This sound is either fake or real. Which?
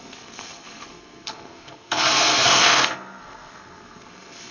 fake